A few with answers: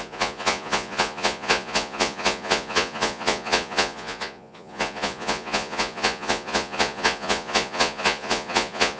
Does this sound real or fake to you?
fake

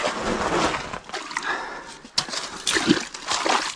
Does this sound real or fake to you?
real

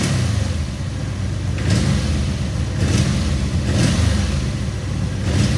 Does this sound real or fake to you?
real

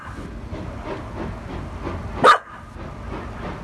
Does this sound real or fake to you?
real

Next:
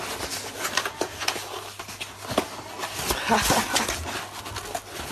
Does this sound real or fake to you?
real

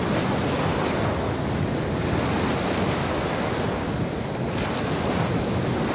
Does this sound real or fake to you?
real